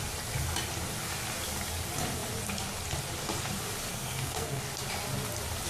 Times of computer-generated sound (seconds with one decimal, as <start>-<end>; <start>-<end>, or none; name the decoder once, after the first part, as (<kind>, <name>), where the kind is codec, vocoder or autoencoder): 3.9-4.6 (codec, SNAC)